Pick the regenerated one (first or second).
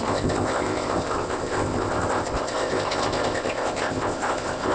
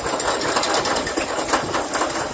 first